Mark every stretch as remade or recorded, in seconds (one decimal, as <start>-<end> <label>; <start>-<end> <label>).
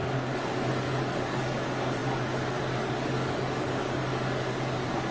0.0-1.0 recorded; 1.0-5.1 remade